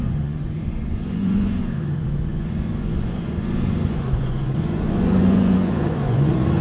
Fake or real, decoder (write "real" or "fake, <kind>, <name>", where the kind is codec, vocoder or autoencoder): fake, vocoder, Vocos